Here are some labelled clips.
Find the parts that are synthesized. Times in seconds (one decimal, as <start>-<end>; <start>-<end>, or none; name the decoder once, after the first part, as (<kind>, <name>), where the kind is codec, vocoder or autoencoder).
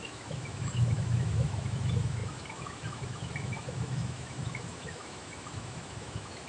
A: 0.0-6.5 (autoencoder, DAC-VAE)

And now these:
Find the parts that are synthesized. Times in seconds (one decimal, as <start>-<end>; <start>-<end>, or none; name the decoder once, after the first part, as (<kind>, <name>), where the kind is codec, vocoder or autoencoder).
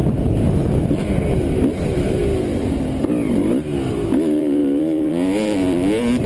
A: 0.5-2.2 (vocoder, BigVGAN v2); 3.9-6.3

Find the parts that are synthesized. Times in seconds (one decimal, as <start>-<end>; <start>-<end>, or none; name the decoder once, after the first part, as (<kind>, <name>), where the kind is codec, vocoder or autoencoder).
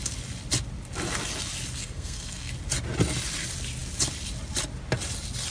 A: 1.8-2.5 (codec, SNAC)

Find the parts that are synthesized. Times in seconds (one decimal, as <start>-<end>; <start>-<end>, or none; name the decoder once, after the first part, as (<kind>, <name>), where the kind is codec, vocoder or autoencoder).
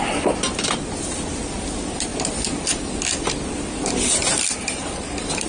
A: none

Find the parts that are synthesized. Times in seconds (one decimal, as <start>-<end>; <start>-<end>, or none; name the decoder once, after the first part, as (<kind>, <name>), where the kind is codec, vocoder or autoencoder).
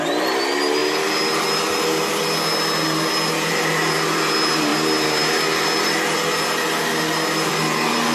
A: none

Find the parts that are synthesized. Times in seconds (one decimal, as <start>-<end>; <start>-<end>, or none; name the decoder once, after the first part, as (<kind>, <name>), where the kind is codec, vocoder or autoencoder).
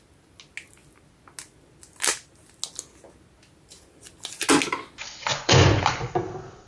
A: 5.3-6.1 (vocoder, Vocos)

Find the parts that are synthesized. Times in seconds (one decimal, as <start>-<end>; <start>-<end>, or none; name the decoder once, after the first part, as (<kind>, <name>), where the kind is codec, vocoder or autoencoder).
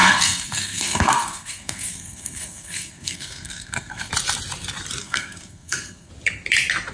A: 0.0-4.1 (codec, SNAC); 5.0-6.1